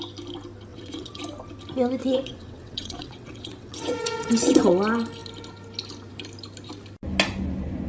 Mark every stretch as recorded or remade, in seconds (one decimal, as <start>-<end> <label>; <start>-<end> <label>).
0.0-0.7 recorded; 0.7-1.2 remade; 1.2-2.0 recorded; 2.0-4.7 remade; 4.7-7.9 recorded